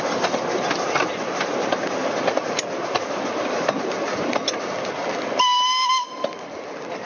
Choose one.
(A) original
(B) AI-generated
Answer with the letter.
A